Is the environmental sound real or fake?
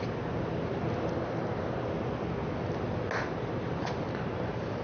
real